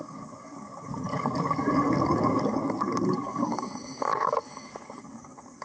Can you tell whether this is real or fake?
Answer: fake